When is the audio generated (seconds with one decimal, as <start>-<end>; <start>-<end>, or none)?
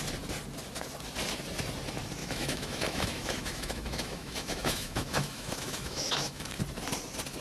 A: 2.2-6.6